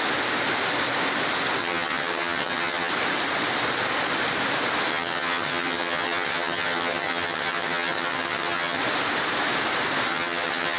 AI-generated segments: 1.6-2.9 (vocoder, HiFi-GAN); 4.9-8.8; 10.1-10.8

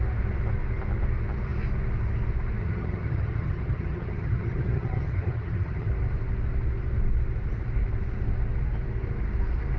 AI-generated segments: 2.6-5.9 (vocoder, HiFi-GAN)

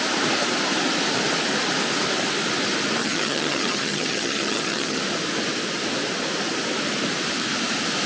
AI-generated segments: 3.0-5.0 (vocoder, HiFi-GAN)

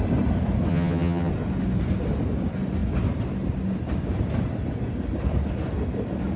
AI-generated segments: 0.7-1.3 (vocoder, HiFi-GAN)

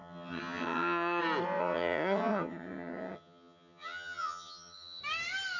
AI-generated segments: 0.0-1.2 (vocoder, HiFi-GAN); 1.6-5.0